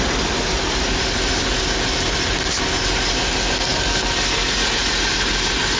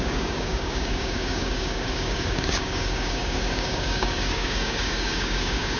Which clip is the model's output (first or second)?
second